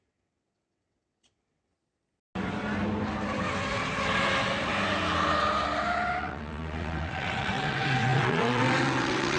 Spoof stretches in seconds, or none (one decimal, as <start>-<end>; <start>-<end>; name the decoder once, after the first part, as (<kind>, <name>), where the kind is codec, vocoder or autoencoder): 0.0-1.7 (vocoder, WaveNeXt); 6.2-9.4